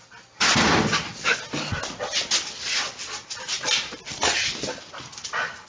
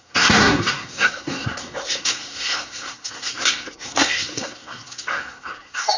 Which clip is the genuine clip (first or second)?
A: first